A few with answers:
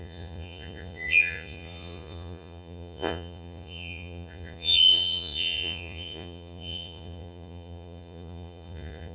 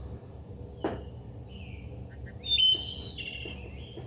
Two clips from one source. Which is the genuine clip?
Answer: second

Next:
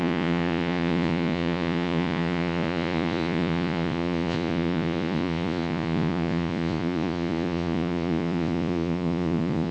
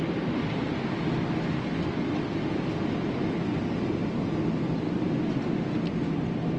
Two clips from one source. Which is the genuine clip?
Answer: second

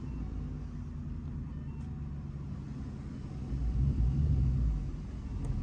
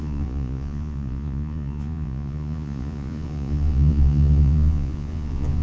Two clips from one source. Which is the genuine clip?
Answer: first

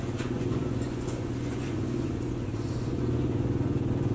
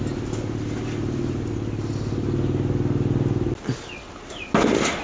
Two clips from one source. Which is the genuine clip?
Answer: second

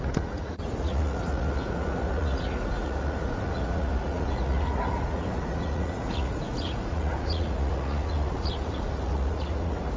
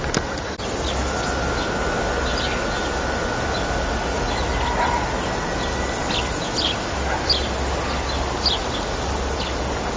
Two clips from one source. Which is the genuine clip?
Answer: second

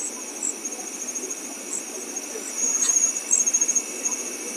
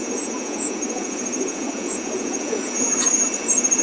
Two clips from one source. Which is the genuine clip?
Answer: first